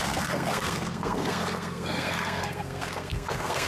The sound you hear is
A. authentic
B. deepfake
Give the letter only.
B